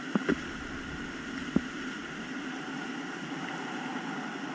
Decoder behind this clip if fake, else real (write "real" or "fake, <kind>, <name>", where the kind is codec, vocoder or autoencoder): real